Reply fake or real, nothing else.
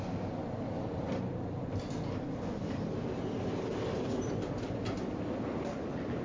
real